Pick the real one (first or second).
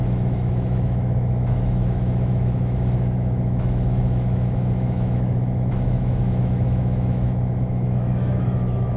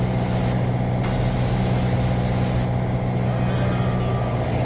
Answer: second